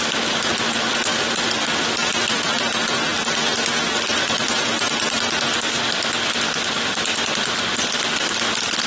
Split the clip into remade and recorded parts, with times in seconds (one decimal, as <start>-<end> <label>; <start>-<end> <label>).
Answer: 0.0-8.9 recorded